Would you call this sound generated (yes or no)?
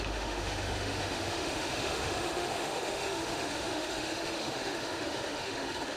yes